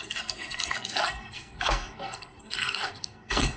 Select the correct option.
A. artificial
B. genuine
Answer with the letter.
A